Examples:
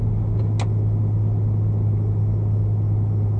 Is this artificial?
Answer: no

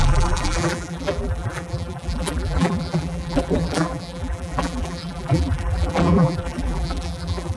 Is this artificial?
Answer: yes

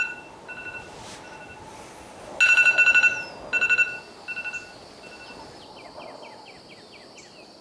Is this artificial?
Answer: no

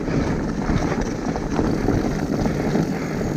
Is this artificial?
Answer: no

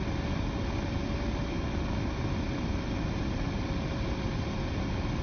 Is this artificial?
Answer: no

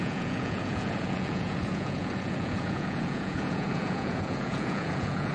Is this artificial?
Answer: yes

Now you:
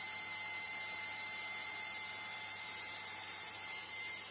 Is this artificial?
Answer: yes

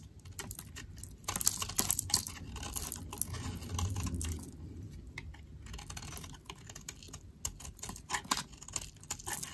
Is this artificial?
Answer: no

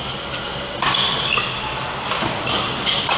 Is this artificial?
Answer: no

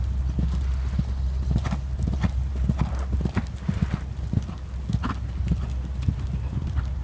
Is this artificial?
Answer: no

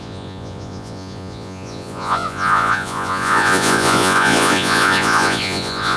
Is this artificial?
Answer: yes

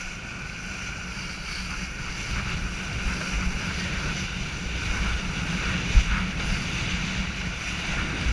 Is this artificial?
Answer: no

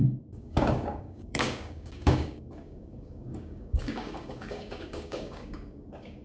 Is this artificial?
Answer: yes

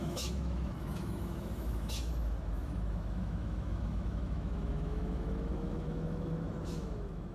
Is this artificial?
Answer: yes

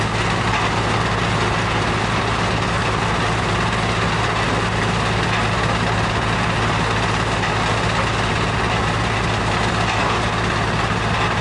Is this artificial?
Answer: no